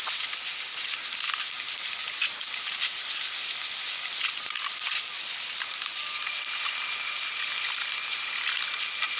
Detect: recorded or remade remade